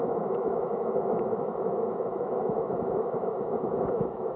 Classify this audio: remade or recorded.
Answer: remade